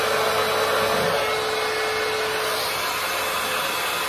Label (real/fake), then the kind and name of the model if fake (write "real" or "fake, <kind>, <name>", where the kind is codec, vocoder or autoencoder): real